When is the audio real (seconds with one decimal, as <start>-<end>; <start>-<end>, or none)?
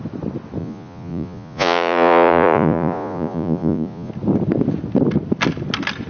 0.0-0.6; 4.1-6.1